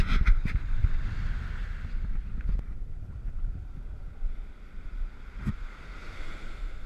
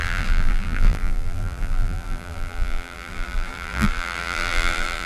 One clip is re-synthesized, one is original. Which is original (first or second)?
first